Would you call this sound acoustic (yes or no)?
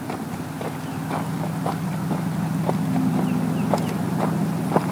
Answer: yes